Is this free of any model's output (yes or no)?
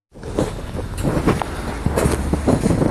yes